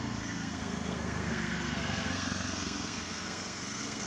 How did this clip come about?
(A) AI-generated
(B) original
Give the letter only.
A